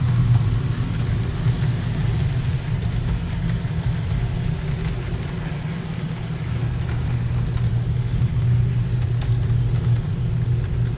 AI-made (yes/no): no